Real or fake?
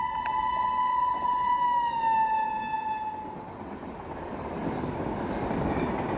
real